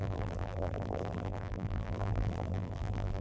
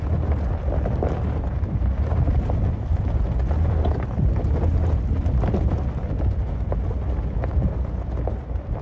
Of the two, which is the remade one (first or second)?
first